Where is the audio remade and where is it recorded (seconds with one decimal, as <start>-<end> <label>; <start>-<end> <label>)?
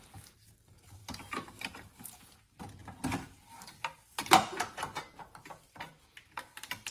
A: 0.0-6.9 remade